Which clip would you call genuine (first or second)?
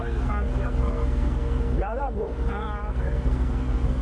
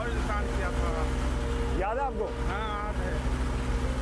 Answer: second